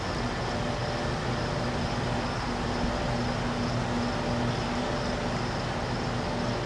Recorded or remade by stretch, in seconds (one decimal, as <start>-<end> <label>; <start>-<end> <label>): 0.0-6.7 recorded